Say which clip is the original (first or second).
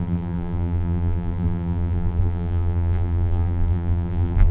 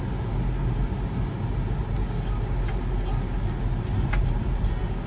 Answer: second